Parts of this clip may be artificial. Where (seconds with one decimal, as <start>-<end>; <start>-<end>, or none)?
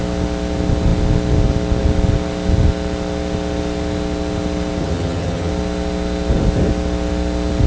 4.8-5.5